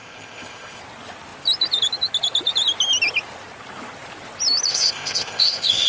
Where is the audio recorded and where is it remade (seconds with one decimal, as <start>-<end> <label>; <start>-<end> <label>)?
0.0-0.8 remade; 0.8-4.7 recorded; 4.7-5.9 remade